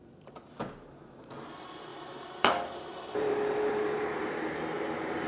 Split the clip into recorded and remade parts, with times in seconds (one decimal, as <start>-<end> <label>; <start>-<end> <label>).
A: 0.0-1.9 recorded; 1.9-4.0 remade; 4.0-5.3 recorded